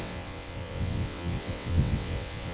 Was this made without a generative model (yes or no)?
no